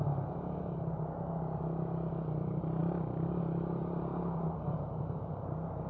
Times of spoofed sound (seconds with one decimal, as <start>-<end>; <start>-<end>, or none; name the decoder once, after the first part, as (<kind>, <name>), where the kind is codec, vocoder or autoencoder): none